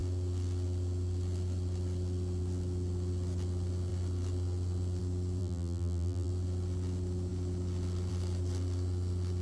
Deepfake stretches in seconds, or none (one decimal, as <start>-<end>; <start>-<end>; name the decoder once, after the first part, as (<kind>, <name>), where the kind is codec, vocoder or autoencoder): 5.4-6.3 (vocoder, BigVGAN v2)

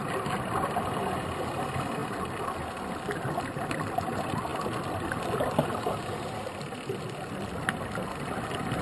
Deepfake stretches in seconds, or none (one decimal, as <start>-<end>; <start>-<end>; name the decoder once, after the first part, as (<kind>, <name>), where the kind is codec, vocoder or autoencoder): none